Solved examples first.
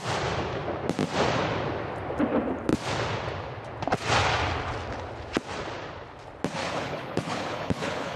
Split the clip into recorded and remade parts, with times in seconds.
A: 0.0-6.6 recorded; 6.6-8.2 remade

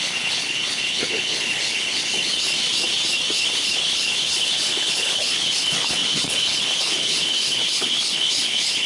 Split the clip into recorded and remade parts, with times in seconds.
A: 0.0-2.6 remade; 2.6-3.3 recorded; 3.3-8.9 remade

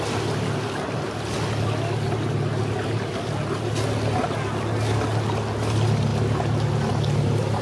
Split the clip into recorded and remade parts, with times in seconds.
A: 0.0-7.6 recorded

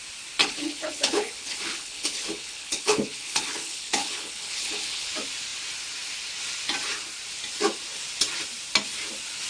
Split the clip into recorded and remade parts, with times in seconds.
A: 0.0-0.4 recorded; 0.4-5.1 remade; 5.1-9.5 recorded

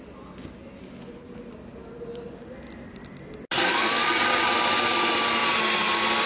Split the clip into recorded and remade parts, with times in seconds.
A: 0.0-6.3 recorded

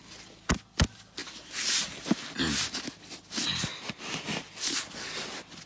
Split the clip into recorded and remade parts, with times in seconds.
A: 0.0-5.7 recorded

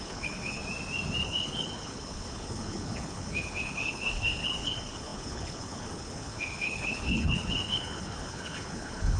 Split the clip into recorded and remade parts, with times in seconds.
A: 0.0-0.6 remade; 0.6-1.2 recorded; 1.2-9.2 remade